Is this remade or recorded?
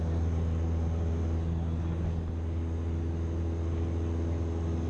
recorded